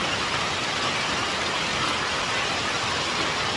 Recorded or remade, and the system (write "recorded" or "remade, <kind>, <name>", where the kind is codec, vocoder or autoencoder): recorded